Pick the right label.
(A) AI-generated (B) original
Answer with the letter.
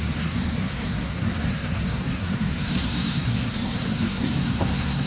A